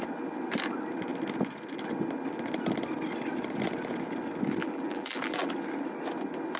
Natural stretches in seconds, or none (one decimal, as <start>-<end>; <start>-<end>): 0.0-4.6; 5.5-6.6